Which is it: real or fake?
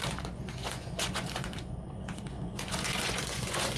fake